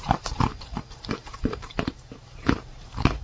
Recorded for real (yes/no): no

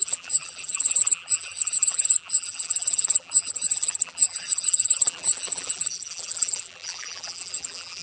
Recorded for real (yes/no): no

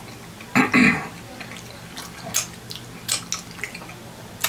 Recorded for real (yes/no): yes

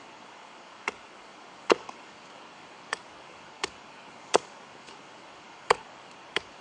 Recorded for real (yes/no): no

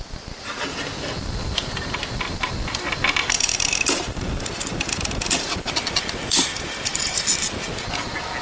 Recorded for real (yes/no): no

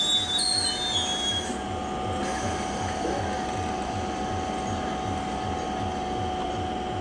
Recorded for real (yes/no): yes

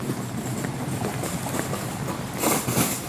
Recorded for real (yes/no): yes